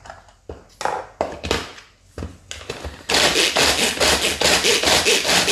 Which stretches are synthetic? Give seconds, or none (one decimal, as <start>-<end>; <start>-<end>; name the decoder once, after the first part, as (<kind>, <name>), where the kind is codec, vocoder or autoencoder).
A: none